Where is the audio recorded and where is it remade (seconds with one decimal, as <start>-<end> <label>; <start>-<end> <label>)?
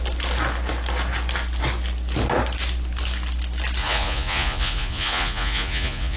0.0-3.8 recorded; 3.8-6.2 remade